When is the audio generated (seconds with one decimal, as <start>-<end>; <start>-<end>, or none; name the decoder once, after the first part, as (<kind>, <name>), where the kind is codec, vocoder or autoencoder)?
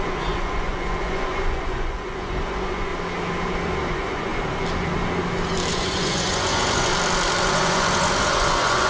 0.0-2.9 (vocoder, Vocos); 3.9-4.3; 5.7-6.9; 7.4-8.9